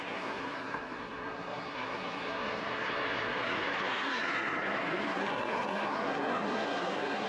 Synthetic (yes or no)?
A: yes